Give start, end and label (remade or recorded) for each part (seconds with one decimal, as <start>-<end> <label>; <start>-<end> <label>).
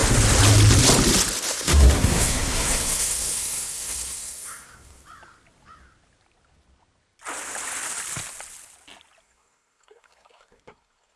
0.0-1.5 recorded; 1.5-5.0 remade; 5.0-9.2 recorded; 9.2-11.2 remade